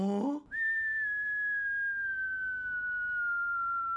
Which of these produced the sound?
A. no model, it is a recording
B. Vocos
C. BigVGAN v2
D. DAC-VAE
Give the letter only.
A